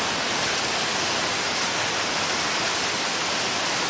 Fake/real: real